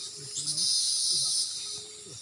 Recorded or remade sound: recorded